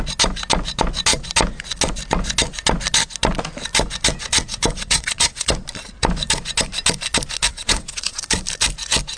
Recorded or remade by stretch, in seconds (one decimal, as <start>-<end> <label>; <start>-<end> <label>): 0.0-4.5 recorded; 4.5-5.5 remade; 5.5-7.5 recorded; 7.5-8.2 remade; 8.2-9.2 recorded